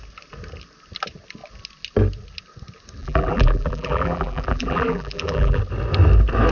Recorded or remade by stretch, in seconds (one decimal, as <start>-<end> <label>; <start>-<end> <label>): 0.0-3.0 recorded; 3.0-5.6 remade; 5.6-6.5 recorded